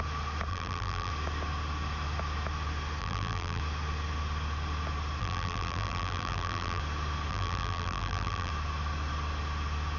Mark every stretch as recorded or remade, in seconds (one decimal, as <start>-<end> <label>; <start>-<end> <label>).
0.0-0.5 recorded; 0.5-1.1 remade; 1.1-3.0 recorded; 3.0-3.6 remade; 3.6-5.2 recorded; 5.2-6.8 remade; 6.8-7.3 recorded; 7.3-8.5 remade; 8.5-10.0 recorded